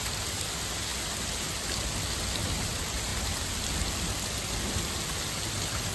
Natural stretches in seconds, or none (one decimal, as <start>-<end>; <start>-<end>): 0.0-5.9

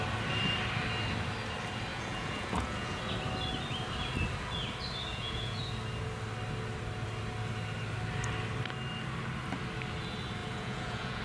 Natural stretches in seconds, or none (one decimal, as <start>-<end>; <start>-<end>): 0.0-1.9; 3.0-5.1; 5.6-10.4

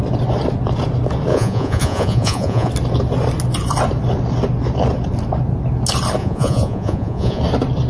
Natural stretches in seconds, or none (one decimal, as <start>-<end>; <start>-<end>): 0.0-1.3; 2.7-6.2; 7.4-7.9

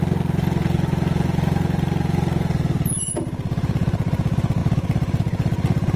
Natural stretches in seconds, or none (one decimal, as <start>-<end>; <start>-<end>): 0.0-6.0

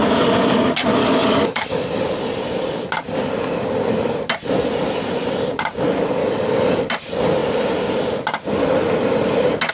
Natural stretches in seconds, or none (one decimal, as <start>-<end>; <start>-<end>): 0.0-1.0; 1.7-6.2; 6.8-9.7

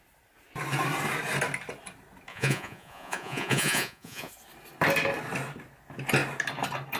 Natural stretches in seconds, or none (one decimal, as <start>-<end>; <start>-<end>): 0.0-2.3; 4.3-7.0

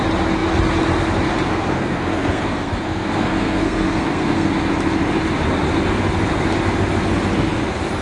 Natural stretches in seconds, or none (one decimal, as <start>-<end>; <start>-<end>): 0.0-1.5; 4.5-8.0